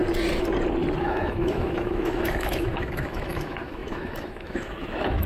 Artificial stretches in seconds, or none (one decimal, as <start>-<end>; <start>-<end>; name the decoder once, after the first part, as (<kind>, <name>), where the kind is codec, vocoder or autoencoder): 1.0-5.3 (autoencoder, DAC-VAE)